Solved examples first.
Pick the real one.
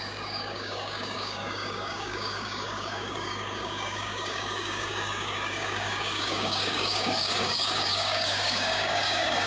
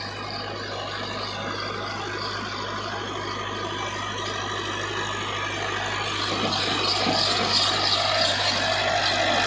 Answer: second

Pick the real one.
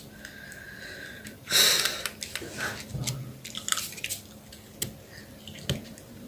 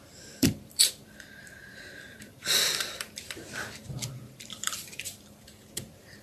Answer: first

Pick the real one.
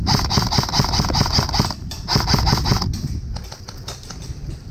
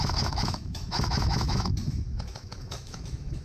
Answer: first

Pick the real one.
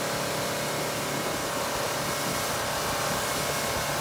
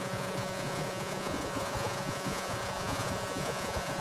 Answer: first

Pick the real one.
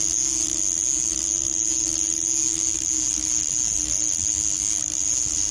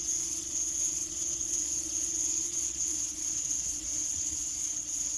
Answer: first